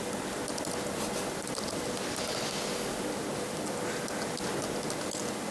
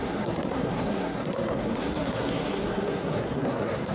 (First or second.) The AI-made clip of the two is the second